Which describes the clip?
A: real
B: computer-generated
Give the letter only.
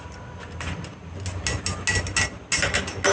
A